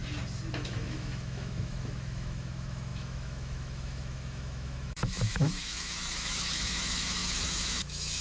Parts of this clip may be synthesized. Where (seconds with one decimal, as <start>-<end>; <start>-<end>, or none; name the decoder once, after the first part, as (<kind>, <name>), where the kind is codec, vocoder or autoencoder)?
0.5-8.2 (autoencoder, DAC-VAE)